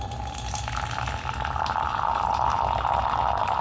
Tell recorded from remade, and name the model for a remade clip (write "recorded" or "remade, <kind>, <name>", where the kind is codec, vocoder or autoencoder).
recorded